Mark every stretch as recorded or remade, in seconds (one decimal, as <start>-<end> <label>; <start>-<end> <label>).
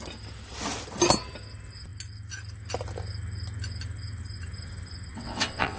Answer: 0.0-5.1 recorded; 5.1-5.8 remade